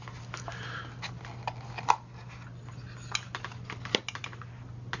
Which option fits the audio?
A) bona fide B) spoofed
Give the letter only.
A